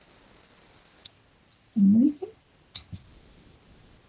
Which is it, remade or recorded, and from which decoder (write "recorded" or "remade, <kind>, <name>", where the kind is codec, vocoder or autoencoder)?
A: recorded